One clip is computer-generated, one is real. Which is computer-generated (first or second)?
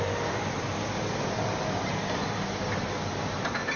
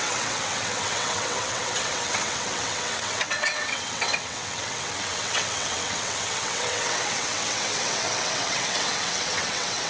second